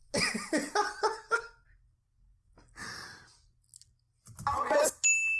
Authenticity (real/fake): real